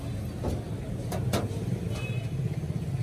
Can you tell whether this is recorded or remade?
recorded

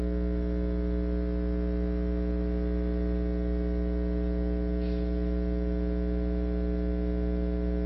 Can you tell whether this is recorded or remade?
recorded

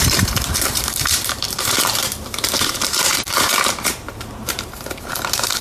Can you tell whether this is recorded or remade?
remade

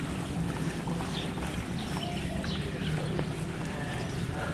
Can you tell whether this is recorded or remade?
remade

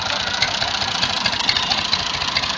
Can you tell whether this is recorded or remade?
recorded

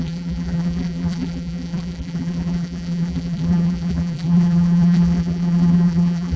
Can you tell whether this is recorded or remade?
remade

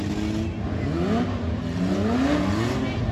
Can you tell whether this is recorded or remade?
recorded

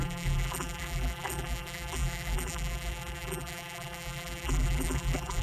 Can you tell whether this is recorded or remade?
remade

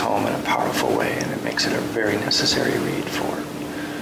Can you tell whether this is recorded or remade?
recorded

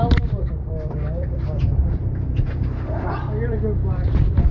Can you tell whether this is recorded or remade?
remade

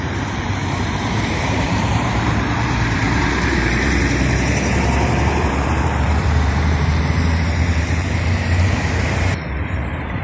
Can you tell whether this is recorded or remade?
remade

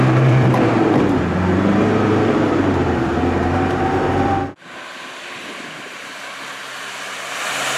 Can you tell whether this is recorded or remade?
remade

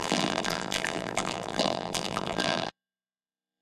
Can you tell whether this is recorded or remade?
remade